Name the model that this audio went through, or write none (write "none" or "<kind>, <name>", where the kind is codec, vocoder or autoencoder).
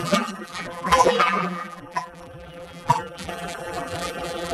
vocoder, BigVGAN v2